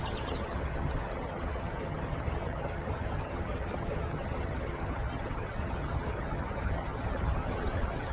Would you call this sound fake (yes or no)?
yes